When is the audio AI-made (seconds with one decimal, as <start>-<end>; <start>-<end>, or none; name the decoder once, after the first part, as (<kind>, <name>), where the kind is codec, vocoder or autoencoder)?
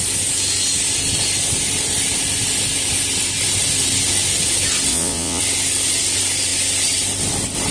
4.9-5.4 (vocoder, Vocos)